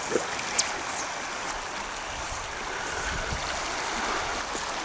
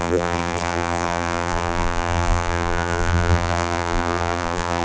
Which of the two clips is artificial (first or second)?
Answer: second